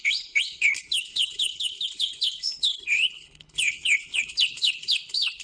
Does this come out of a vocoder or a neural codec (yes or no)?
yes